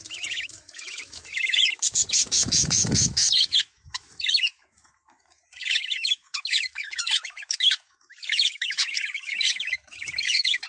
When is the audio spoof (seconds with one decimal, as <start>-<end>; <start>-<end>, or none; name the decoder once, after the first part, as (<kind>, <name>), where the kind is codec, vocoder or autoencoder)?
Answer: 0.0-10.7 (autoencoder, DAC-VAE)